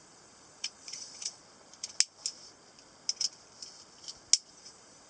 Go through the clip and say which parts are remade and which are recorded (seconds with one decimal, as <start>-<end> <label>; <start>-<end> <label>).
0.0-1.4 remade; 1.4-4.5 recorded; 4.5-5.1 remade